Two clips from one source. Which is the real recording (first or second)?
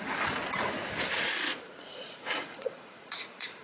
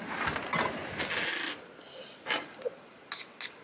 second